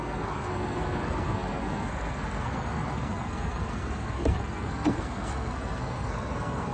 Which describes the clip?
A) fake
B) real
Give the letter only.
A